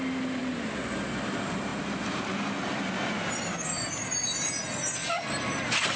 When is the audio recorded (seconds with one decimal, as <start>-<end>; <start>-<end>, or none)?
0.0-0.4; 0.9-6.0